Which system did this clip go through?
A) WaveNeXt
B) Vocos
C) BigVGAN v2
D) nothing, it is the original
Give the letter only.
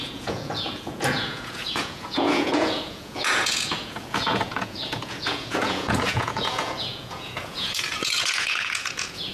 B